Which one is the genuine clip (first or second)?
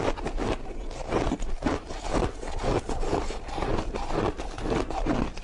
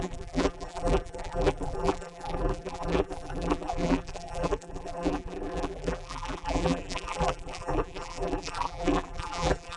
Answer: first